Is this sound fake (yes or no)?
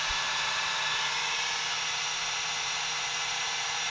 yes